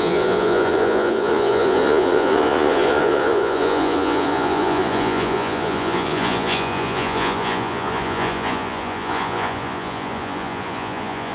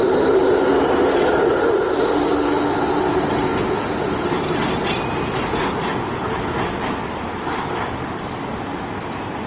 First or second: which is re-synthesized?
first